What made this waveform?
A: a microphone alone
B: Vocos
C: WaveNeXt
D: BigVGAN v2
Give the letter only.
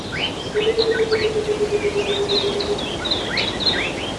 A